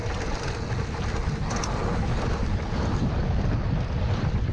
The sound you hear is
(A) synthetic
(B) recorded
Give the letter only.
B